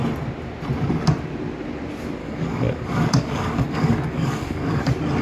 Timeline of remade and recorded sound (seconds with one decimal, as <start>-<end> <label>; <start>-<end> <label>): 0.0-2.2 recorded; 2.2-4.8 remade; 4.8-5.2 recorded